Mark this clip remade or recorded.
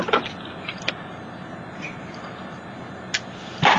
recorded